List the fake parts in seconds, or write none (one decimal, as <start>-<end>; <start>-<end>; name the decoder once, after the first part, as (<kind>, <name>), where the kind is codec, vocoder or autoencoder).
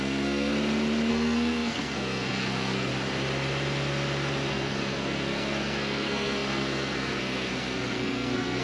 0.0-0.5 (codec, SNAC); 1.1-2.9; 4.5-8.6